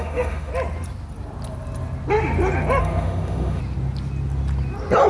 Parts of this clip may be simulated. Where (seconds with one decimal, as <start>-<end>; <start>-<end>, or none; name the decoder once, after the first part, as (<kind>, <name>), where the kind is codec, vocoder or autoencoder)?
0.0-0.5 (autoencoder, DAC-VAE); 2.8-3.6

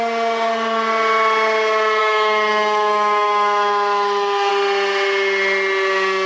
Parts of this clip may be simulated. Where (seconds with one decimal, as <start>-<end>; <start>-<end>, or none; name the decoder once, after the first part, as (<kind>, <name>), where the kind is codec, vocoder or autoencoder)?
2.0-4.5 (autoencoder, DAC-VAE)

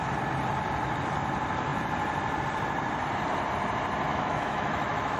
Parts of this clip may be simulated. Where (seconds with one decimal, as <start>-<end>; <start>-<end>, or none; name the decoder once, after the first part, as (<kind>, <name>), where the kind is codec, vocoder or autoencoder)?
4.1-5.2 (autoencoder, DAC-VAE)

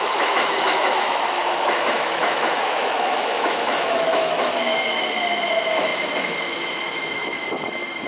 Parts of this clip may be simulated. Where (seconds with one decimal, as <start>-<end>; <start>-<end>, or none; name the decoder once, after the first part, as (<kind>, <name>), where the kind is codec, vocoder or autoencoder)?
0.0-8.1 (autoencoder, DAC-VAE)

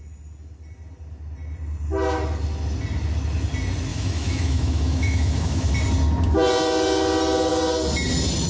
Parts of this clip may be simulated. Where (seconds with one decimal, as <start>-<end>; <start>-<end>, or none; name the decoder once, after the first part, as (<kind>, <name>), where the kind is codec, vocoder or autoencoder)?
3.9-5.7 (autoencoder, DAC-VAE)